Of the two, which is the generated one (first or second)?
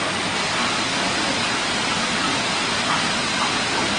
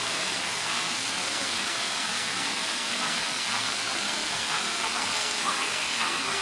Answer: second